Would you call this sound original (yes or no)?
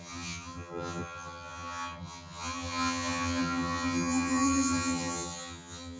no